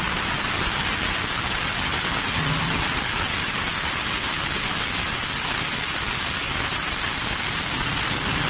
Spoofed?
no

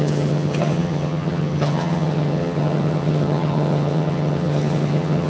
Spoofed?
yes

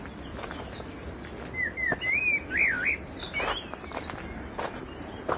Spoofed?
no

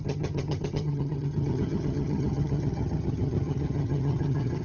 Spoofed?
yes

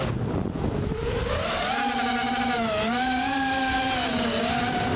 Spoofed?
no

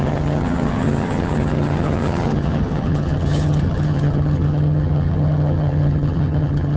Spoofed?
yes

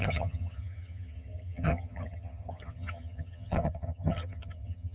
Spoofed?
yes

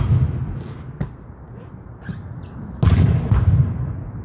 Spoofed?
no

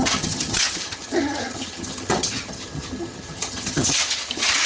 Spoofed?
yes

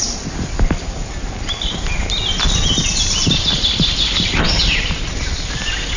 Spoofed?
no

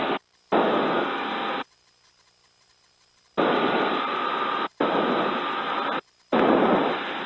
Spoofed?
no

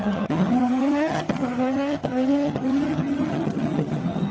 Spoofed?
yes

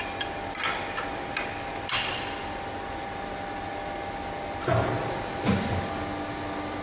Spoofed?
no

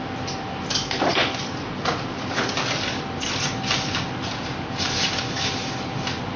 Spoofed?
no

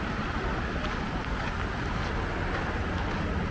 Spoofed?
no